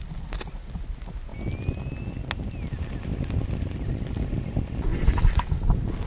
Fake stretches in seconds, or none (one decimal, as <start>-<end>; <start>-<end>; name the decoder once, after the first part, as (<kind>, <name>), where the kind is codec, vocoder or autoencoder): none